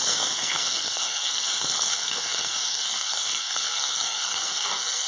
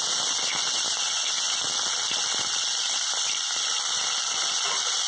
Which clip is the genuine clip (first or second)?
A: second